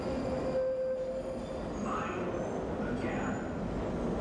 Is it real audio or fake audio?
real